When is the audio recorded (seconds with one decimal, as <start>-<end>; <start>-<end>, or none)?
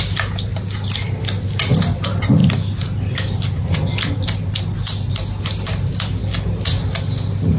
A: 0.0-7.6